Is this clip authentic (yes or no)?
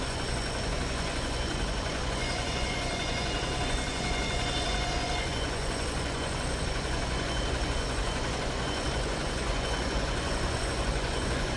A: no